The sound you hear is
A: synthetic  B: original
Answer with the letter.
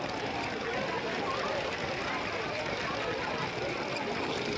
B